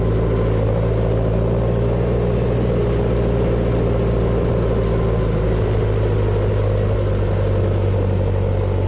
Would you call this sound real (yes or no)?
yes